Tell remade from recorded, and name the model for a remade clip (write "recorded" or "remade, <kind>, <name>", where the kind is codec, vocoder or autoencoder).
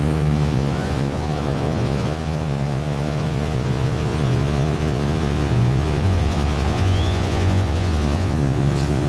remade, vocoder, Vocos